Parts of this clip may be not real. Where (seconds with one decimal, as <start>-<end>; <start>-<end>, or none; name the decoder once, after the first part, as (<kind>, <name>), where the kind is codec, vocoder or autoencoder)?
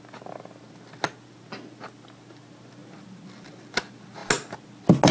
none